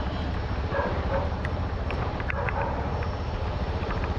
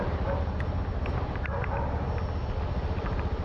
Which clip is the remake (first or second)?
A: first